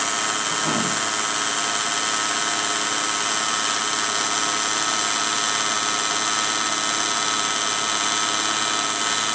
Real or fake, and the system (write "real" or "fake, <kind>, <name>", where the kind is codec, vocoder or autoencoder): real